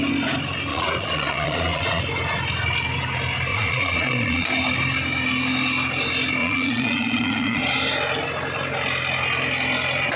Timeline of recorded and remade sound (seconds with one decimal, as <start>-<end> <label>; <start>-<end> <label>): 0.0-0.7 recorded; 0.7-2.0 remade; 2.0-3.5 recorded; 3.5-4.5 remade; 4.5-6.4 recorded; 6.4-7.6 remade; 7.6-10.2 recorded